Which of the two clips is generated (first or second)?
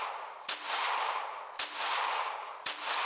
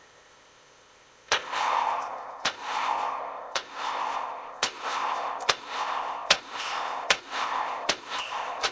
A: second